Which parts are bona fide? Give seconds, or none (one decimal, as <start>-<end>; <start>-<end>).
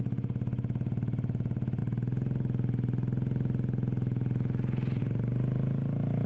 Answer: 0.0-6.3